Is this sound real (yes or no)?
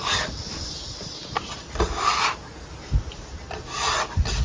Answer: yes